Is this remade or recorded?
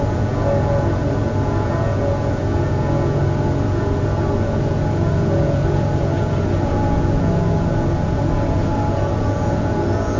remade